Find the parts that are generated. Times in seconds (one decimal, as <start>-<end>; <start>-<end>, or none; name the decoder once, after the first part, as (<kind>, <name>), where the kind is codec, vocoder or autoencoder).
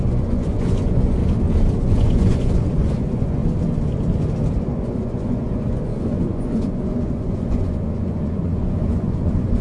0.0-1.2 (vocoder, Vocos); 1.7-3.4; 4.7-9.6